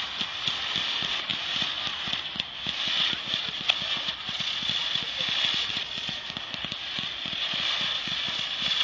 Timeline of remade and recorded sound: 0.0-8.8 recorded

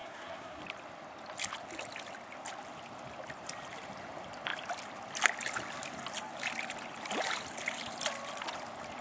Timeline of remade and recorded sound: 0.0-0.6 remade; 0.6-9.0 recorded

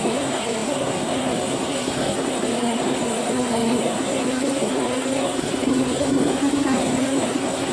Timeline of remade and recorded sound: 0.0-7.7 remade

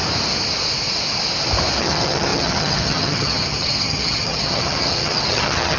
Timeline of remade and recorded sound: 0.0-1.8 recorded; 1.8-5.8 remade